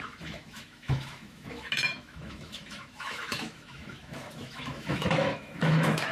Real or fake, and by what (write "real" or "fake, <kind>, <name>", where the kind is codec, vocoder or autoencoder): fake, autoencoder, DAC-VAE